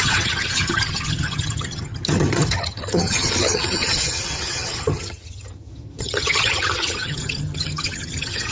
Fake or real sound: fake